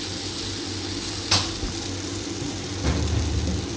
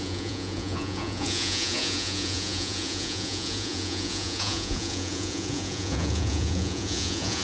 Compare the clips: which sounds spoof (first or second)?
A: second